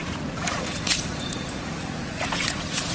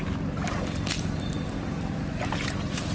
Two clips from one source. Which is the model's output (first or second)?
first